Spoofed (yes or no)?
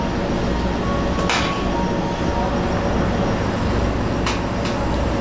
no